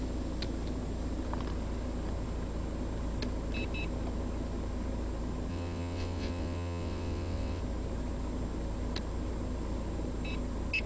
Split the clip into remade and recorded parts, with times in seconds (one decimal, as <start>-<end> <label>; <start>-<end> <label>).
0.0-5.5 recorded; 5.5-7.6 remade; 7.6-10.9 recorded